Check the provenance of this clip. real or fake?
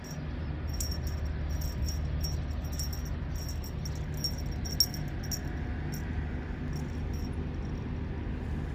real